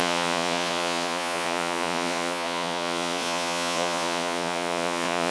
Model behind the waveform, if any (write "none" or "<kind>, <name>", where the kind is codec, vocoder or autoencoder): vocoder, Vocos